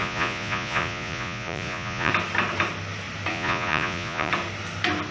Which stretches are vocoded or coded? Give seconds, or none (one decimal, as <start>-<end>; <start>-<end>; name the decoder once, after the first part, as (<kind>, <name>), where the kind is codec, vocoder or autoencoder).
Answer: 0.0-2.1 (vocoder, Vocos); 3.3-4.3